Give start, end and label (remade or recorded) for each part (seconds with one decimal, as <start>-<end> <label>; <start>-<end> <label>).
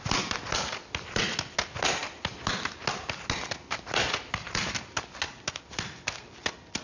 0.0-6.8 recorded